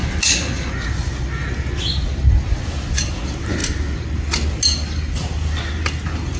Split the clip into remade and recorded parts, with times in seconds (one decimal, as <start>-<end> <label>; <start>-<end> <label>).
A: 0.0-6.4 recorded